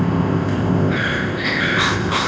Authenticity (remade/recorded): remade